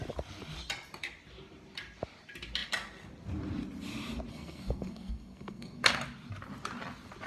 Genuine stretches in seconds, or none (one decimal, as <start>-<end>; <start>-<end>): 0.0-4.3; 5.8-7.3